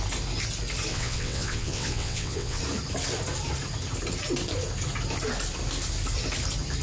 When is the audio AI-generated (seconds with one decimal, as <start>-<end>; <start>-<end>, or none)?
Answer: 0.9-2.6